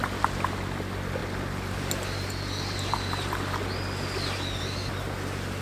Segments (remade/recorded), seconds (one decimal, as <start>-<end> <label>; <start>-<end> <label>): 0.0-5.6 recorded